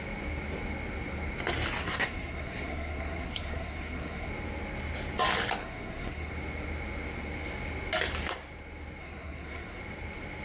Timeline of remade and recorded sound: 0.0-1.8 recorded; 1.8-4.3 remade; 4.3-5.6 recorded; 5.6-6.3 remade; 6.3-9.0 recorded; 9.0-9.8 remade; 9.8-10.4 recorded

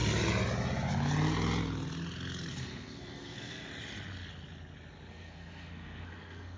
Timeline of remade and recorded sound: 0.0-2.5 recorded; 2.5-3.7 remade; 3.7-5.1 recorded; 5.1-6.6 remade

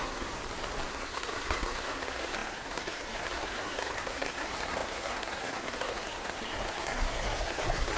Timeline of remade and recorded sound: 0.0-0.4 remade; 0.4-0.9 recorded; 0.9-8.0 remade

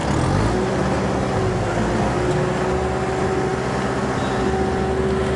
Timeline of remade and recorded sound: 0.0-5.4 recorded

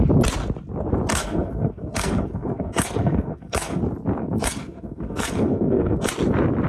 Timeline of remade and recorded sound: 0.0-1.1 recorded; 1.1-3.8 remade; 3.8-4.2 recorded; 4.2-6.1 remade; 6.1-6.7 recorded

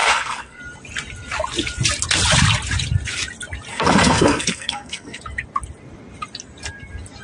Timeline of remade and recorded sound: 0.0-0.6 remade; 0.6-3.7 recorded; 3.7-5.2 remade; 5.2-7.2 recorded

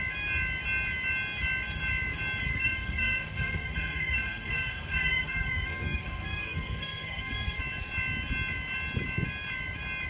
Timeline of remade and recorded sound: 0.0-2.5 recorded; 2.5-7.6 remade; 7.6-10.1 recorded